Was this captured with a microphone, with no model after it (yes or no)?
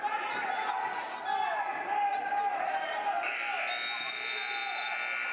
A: yes